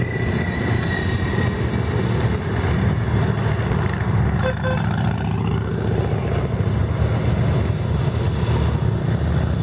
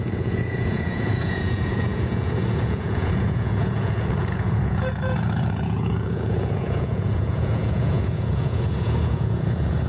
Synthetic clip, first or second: second